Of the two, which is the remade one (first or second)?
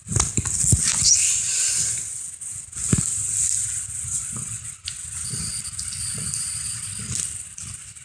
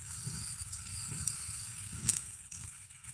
second